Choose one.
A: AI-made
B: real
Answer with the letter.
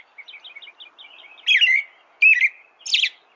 B